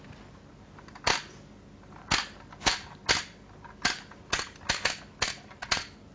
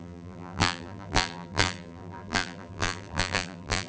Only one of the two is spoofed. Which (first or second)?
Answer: second